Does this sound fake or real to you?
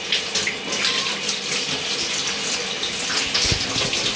real